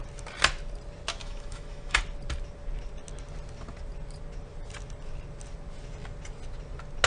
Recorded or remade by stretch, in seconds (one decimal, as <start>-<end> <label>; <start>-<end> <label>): 0.0-1.2 recorded; 1.2-2.0 remade; 2.0-7.1 recorded